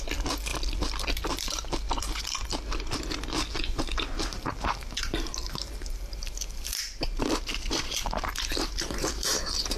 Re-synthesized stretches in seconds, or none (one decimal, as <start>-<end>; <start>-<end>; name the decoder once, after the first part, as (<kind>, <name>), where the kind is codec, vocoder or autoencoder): 4.3-9.8 (vocoder, BigVGAN v2)